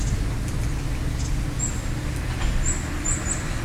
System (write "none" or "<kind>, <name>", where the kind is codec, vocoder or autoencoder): none